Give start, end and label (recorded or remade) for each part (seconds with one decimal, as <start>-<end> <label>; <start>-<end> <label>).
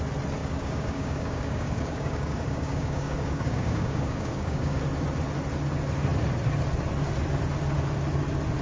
0.0-0.4 recorded; 0.4-4.8 remade; 4.8-8.6 recorded